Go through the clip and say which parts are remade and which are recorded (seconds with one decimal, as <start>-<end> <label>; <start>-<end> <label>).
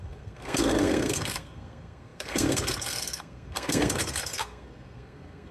0.0-5.5 remade